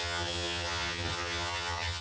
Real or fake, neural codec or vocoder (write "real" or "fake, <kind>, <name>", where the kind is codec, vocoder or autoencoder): fake, vocoder, HiFi-GAN